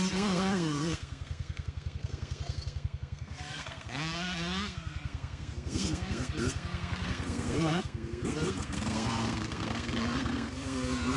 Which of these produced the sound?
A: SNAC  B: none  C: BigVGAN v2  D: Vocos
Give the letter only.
A